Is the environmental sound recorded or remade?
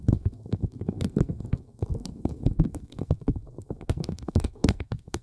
remade